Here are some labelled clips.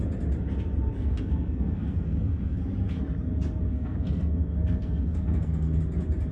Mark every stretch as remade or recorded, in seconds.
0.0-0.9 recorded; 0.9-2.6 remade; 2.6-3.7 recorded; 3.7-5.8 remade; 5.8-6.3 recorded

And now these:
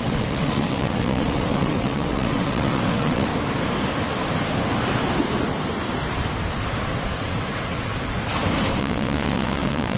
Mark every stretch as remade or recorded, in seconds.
0.0-3.3 remade; 3.3-7.2 recorded; 7.2-7.9 remade; 7.9-8.8 recorded; 8.8-10.0 remade

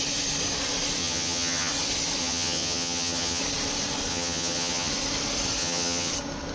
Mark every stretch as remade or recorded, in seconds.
0.0-1.0 recorded; 1.0-1.7 remade; 1.7-2.2 recorded; 2.2-3.4 remade; 3.4-4.1 recorded; 4.1-4.9 remade; 4.9-5.6 recorded; 5.6-6.1 remade; 6.1-6.5 recorded

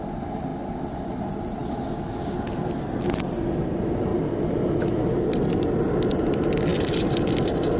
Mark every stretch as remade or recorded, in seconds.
0.0-6.7 recorded; 6.7-7.8 remade

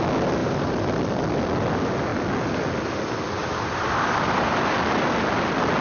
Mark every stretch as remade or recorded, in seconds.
0.0-0.4 recorded; 0.4-1.0 remade; 1.0-3.4 recorded; 3.4-4.7 remade; 4.7-5.8 recorded

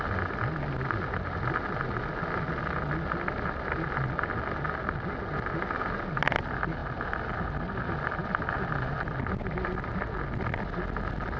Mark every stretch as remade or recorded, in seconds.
0.0-11.4 recorded